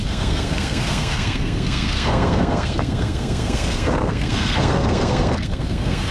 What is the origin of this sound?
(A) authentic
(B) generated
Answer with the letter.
B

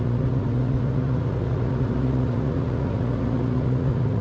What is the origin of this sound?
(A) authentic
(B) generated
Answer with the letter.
B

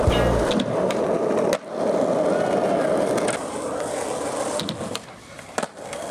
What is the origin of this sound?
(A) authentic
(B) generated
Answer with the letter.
A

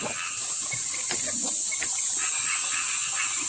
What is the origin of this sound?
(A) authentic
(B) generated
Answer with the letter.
A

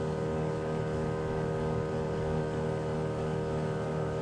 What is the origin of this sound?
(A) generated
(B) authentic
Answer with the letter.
A